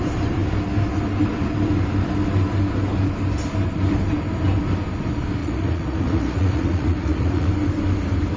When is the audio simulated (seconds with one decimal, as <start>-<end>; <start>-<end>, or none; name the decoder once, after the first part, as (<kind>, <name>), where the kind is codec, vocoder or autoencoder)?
5.4-7.5 (vocoder, Vocos)